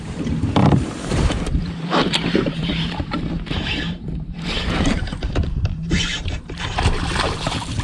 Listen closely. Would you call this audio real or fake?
fake